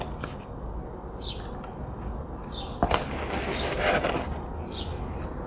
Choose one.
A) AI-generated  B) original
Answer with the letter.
B